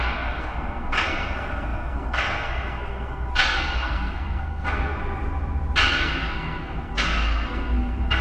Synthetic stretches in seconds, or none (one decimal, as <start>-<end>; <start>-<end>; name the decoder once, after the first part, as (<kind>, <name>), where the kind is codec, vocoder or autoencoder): 0.0-5.0 (codec, SNAC); 5.8-8.2